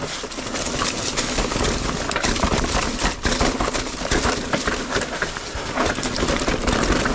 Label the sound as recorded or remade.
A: recorded